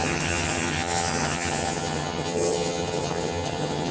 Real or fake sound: fake